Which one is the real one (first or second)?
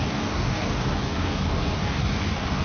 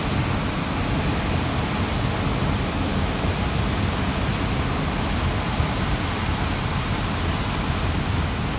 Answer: second